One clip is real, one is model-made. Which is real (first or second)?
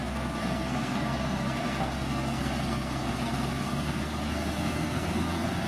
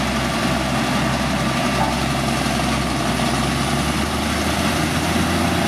second